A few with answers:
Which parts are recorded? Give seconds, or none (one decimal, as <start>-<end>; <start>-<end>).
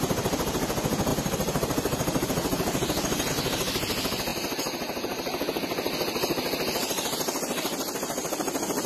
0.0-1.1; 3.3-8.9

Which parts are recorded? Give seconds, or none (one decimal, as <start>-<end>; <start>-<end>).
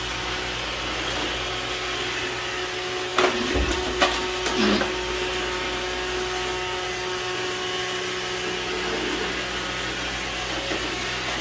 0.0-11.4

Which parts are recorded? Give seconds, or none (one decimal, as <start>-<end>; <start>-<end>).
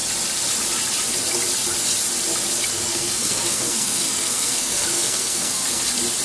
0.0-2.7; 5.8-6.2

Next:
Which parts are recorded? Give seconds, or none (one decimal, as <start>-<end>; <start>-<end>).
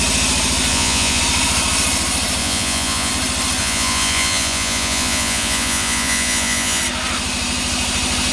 0.0-0.7; 1.2-2.4; 3.1-3.6; 6.8-8.3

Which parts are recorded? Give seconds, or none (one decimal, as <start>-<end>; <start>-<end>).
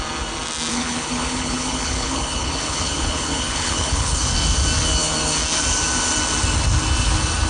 0.0-0.7; 4.2-7.5